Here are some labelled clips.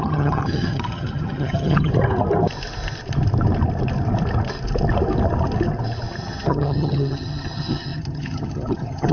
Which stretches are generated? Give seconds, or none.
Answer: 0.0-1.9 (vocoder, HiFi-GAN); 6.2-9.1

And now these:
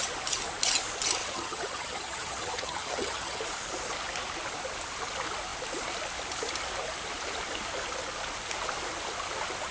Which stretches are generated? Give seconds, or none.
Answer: 1.2-3.4 (vocoder, HiFi-GAN)

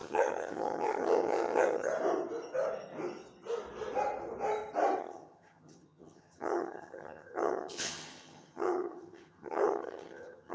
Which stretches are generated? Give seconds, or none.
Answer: 0.0-1.9 (vocoder, HiFi-GAN); 5.0-10.5

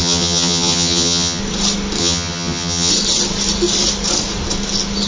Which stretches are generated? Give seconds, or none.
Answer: 0.0-1.4 (vocoder, HiFi-GAN); 2.0-2.9

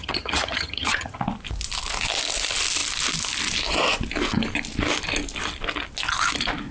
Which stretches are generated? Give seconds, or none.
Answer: 0.0-1.2 (vocoder, HiFi-GAN)